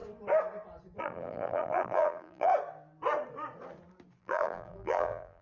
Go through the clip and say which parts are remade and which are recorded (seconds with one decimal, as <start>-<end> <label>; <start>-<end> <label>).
0.0-1.0 recorded; 1.0-2.5 remade; 2.5-4.2 recorded; 4.2-5.4 remade